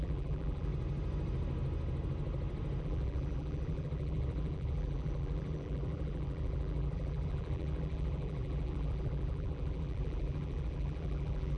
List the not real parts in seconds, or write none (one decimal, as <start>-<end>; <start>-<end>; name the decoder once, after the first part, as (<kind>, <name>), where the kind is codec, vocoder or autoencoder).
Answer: 0.0-0.7 (vocoder, BigVGAN v2); 2.8-11.6